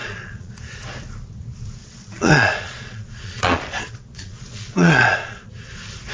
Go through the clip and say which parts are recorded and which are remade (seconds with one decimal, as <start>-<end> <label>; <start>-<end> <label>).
0.0-0.6 remade; 0.6-1.8 recorded; 1.8-5.5 remade; 5.5-6.1 recorded